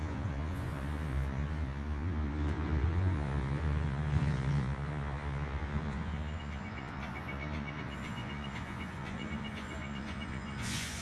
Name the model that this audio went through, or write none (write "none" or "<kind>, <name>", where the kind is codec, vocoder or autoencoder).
vocoder, Vocos